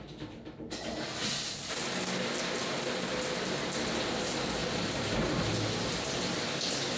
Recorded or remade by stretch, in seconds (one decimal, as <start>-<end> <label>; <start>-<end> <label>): 0.0-7.0 recorded